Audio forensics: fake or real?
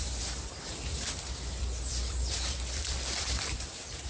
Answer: fake